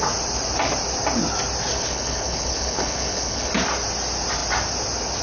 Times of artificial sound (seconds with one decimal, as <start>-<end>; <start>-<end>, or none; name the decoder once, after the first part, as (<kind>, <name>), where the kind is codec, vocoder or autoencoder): 1.7-3.5 (codec, HILCodec)